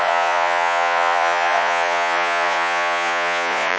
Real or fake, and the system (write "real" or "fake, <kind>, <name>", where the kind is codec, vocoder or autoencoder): fake, vocoder, Vocos